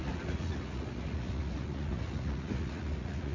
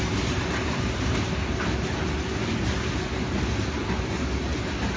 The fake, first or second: first